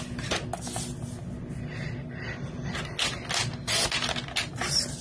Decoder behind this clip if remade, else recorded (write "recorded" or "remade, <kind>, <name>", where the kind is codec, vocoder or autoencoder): recorded